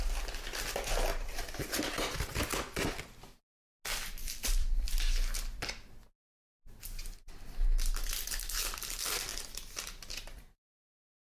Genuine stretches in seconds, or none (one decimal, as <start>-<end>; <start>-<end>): 0.0-1.1; 1.6-4.2; 5.0-9.3